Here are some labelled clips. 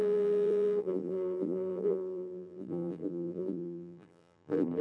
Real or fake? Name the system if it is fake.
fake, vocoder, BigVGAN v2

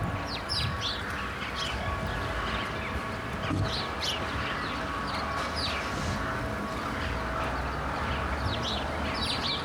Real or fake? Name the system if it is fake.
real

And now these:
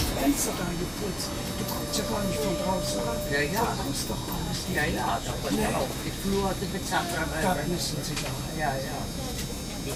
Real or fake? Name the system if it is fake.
real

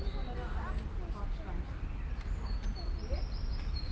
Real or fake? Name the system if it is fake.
real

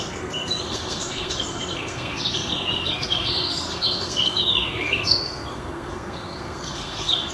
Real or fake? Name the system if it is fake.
fake, codec, SNAC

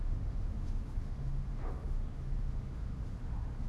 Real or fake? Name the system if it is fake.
fake, autoencoder, DAC-VAE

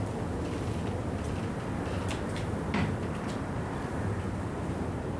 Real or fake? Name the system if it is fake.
fake, vocoder, BigVGAN v2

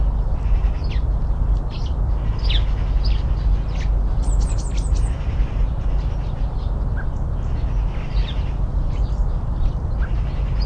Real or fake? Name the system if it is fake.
real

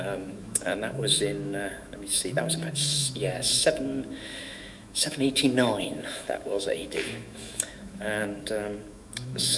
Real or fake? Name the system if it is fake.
fake, autoencoder, DAC-VAE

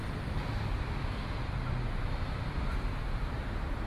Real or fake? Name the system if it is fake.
real